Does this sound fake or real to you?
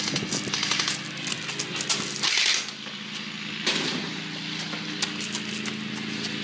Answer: real